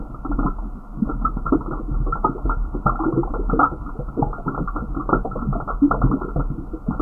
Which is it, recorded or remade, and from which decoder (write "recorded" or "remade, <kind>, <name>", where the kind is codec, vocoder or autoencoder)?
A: recorded